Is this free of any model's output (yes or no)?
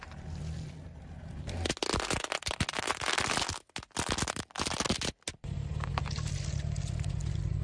yes